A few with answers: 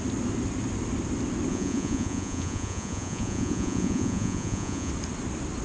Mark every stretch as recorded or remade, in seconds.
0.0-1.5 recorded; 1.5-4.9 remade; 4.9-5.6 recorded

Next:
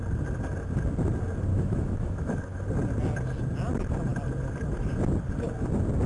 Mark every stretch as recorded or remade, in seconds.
0.0-1.5 recorded; 1.5-2.6 remade; 2.6-6.1 recorded

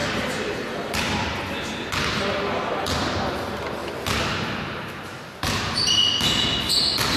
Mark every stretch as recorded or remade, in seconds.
0.0-1.4 remade; 1.4-7.2 recorded

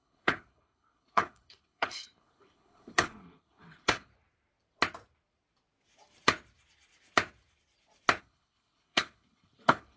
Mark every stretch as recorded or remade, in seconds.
0.0-4.1 remade; 4.1-8.2 recorded; 8.2-10.0 remade

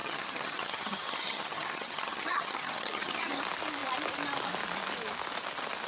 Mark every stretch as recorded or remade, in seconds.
0.0-3.4 remade; 3.4-5.9 recorded

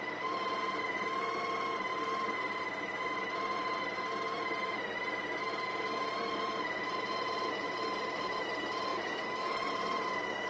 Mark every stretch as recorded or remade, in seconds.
0.0-8.9 recorded; 8.9-9.7 remade; 9.7-10.5 recorded

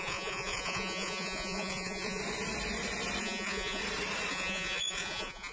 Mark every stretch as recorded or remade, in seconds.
0.0-2.2 remade; 2.2-3.2 recorded; 3.2-3.8 remade; 3.8-4.3 recorded; 4.3-5.5 remade

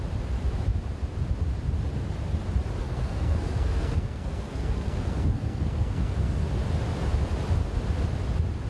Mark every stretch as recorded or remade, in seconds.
0.0-2.8 recorded; 2.8-6.5 remade; 6.5-8.7 recorded